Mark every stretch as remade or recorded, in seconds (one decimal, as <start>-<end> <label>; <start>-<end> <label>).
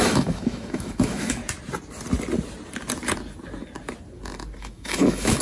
0.0-1.4 remade; 1.4-4.6 recorded; 4.6-5.4 remade